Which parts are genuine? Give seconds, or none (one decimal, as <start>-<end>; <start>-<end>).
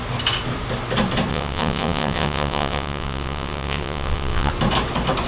0.0-1.3; 4.5-5.3